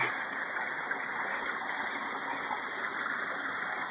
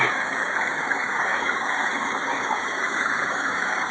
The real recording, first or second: first